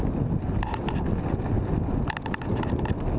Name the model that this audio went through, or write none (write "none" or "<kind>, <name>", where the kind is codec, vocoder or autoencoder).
none